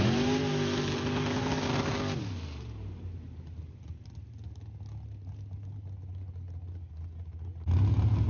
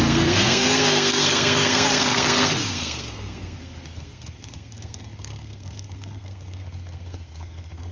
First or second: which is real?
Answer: first